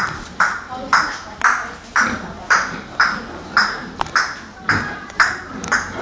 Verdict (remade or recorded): recorded